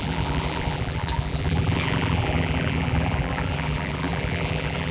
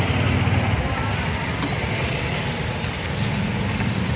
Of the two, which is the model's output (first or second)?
first